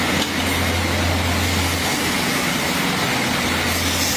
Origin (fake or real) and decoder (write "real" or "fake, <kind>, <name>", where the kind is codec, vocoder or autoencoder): real